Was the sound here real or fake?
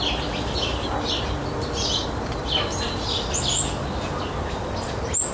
real